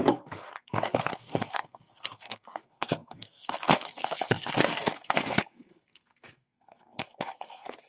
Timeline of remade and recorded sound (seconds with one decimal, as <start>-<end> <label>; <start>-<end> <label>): 0.0-7.9 remade